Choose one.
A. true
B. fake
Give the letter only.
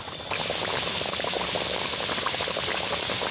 A